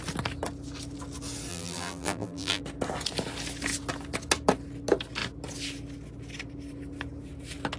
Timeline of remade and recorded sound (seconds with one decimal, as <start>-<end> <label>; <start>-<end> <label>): 0.0-1.5 recorded; 1.5-2.6 remade; 2.6-7.8 recorded

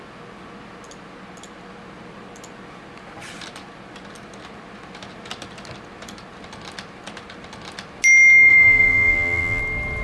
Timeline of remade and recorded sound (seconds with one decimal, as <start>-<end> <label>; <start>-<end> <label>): 0.0-8.5 recorded; 8.5-9.6 remade; 9.6-10.0 recorded